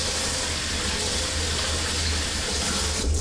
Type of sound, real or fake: real